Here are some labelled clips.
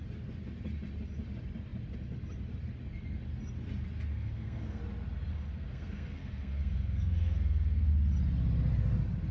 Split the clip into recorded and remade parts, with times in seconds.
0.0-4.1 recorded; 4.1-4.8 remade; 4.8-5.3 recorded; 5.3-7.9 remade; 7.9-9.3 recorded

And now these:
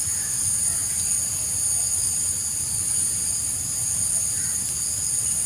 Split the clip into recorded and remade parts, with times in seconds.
0.0-5.5 recorded

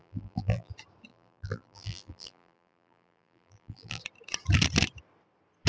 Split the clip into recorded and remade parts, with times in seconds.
0.0-0.7 remade; 0.7-1.1 recorded; 1.1-4.0 remade; 4.0-5.7 recorded

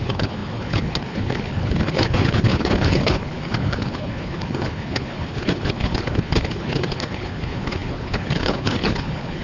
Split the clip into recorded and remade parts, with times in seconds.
0.0-9.4 remade

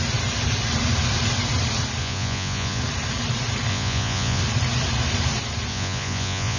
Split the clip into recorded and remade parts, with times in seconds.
0.0-2.0 recorded; 2.0-2.8 remade; 2.8-3.7 recorded; 3.7-4.4 remade; 4.4-5.7 recorded; 5.7-6.6 remade

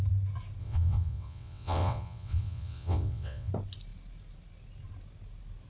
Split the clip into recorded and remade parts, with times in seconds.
0.0-0.6 recorded; 0.6-3.5 remade; 3.5-5.7 recorded

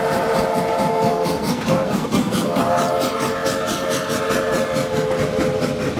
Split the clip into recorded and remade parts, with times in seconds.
0.0-0.9 recorded; 0.9-2.6 remade; 2.6-6.0 recorded